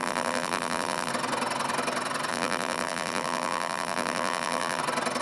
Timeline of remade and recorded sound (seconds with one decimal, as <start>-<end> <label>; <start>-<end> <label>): 0.0-1.1 remade; 1.1-2.3 recorded; 2.3-4.8 remade; 4.8-5.2 recorded

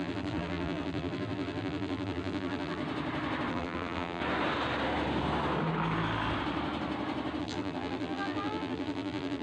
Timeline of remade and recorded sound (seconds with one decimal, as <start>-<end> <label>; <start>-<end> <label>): 0.0-2.8 remade; 2.8-3.5 recorded; 3.5-4.2 remade; 4.2-7.4 recorded; 7.4-9.4 remade